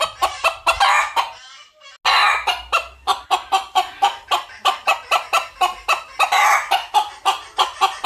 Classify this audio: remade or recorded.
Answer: recorded